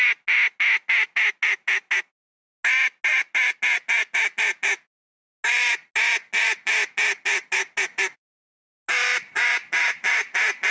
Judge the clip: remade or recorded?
recorded